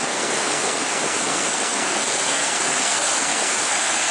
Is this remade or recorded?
remade